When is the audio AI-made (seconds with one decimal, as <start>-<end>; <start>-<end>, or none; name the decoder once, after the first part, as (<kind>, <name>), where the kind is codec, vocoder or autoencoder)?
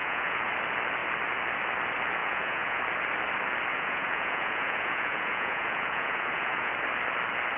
0.0-0.5 (vocoder, Vocos); 2.2-2.8; 3.7-6.7